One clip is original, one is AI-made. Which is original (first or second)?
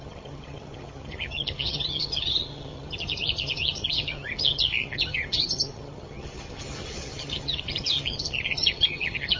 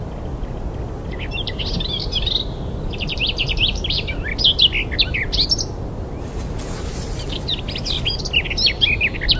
second